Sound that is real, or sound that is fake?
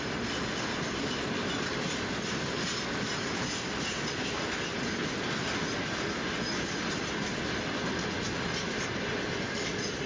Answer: real